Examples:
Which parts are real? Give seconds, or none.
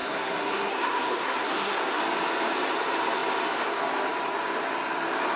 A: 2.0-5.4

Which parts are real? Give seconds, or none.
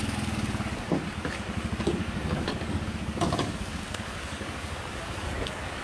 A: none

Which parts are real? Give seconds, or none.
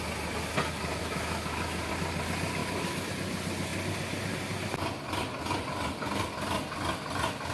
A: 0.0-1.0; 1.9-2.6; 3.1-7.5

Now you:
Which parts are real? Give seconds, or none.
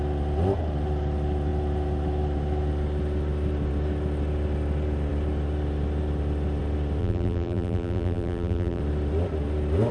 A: 0.0-7.0; 8.8-9.9